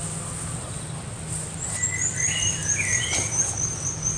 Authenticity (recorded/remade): recorded